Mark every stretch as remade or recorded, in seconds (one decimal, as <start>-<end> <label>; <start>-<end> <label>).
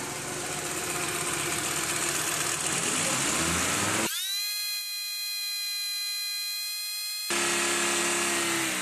0.0-8.8 recorded